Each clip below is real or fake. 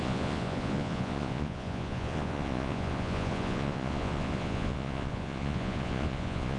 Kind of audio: fake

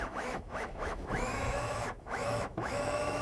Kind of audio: fake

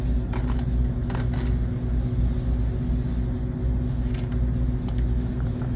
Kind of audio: real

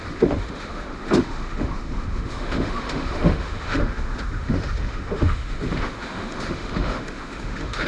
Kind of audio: fake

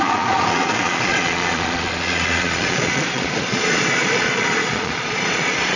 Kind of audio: fake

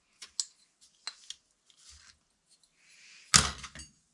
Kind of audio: real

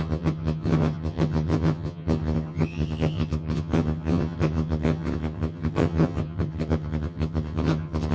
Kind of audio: fake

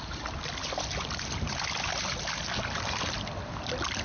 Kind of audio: real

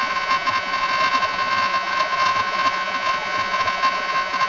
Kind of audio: fake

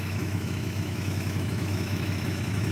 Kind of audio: fake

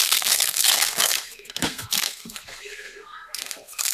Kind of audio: fake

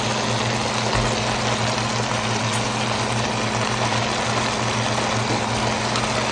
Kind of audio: real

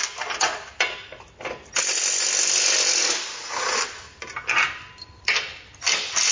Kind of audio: real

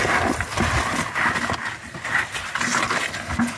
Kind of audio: real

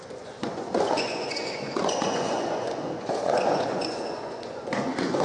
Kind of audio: fake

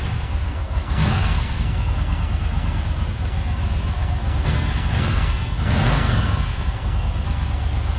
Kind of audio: fake